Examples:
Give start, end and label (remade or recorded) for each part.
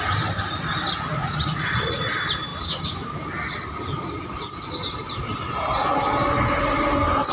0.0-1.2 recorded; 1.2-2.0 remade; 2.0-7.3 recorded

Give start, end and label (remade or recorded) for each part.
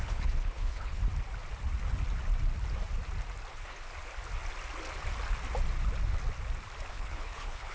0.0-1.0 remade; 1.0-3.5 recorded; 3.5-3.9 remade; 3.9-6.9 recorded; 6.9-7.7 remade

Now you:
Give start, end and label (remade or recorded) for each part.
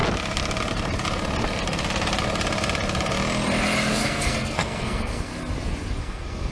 0.0-3.9 recorded; 3.9-5.3 remade; 5.3-6.0 recorded; 6.0-6.5 remade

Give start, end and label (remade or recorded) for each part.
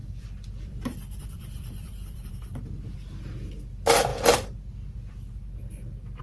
0.0-2.3 remade; 2.3-6.2 recorded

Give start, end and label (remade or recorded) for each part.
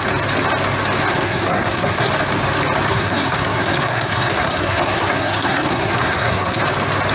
0.0-1.1 recorded; 1.1-2.1 remade; 2.1-2.9 recorded; 2.9-6.6 remade; 6.6-7.1 recorded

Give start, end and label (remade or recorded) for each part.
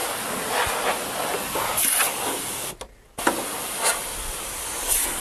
0.0-5.2 recorded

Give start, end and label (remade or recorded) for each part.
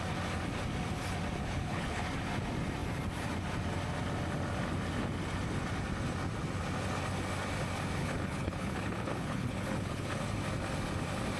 0.0-1.4 recorded; 1.4-2.0 remade; 2.0-8.0 recorded; 8.0-10.2 remade; 10.2-11.4 recorded